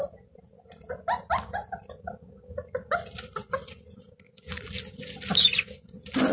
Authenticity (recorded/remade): recorded